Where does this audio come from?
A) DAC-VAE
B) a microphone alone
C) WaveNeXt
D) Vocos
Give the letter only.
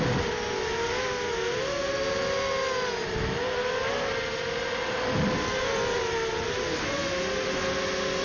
B